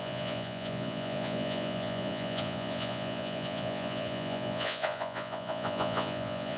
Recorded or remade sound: remade